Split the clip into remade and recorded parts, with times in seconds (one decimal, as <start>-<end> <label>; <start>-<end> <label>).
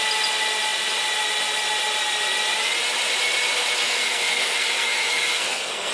0.0-3.8 recorded; 3.8-5.9 remade